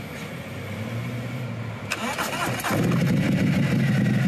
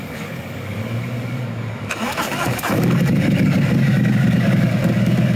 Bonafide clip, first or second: first